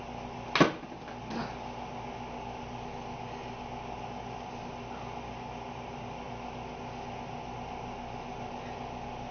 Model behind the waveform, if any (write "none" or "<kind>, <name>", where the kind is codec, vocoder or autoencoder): none